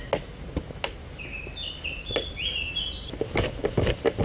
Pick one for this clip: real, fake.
real